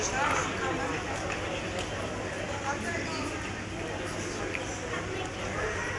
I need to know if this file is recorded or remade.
recorded